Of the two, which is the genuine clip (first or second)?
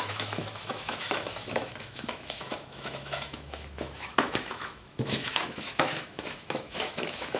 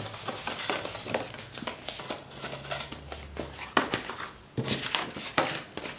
second